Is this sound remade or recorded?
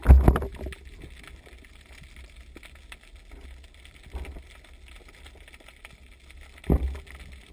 recorded